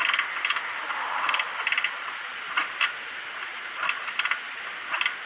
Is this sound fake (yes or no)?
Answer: no